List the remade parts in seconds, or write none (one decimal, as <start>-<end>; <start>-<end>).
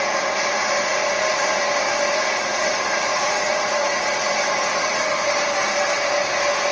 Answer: 3.1-4.2